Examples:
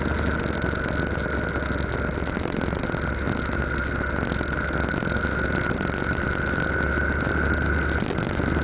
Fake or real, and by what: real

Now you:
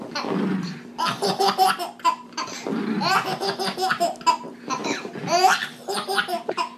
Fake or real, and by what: real